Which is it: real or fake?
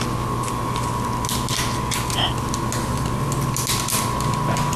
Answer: real